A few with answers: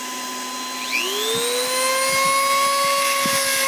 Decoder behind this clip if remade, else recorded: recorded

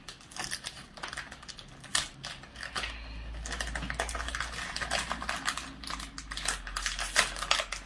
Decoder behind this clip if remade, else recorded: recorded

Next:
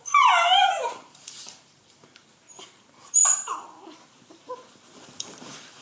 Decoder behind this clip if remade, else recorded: remade, vocoder, BigVGAN v2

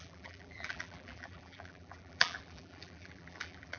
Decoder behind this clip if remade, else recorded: remade, vocoder, BigVGAN v2